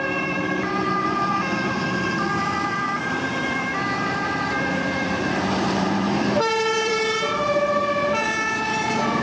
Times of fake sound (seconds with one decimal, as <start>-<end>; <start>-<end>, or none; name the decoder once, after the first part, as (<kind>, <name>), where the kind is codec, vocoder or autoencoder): 0.0-9.2 (vocoder, BigVGAN v2)